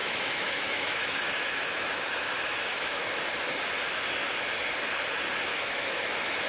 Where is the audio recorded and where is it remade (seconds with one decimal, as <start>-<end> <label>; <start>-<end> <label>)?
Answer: 0.0-3.0 remade; 3.0-5.5 recorded; 5.5-6.5 remade